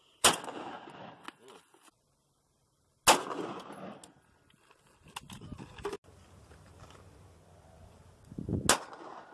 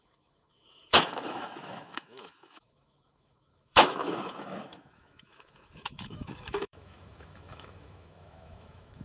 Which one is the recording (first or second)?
first